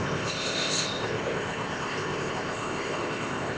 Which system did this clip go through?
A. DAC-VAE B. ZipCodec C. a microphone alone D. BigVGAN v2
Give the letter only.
B